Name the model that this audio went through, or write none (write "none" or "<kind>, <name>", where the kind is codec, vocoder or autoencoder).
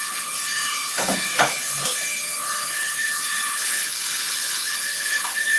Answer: codec, HILCodec